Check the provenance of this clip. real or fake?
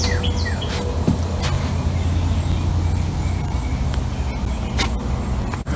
real